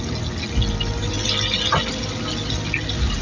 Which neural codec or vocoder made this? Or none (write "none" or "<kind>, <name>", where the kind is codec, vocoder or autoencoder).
none